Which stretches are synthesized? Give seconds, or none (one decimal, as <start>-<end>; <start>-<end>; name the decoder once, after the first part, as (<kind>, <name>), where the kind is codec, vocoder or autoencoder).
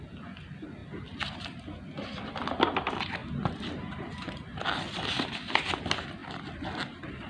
3.2-4.8 (vocoder, BigVGAN v2); 6.2-7.3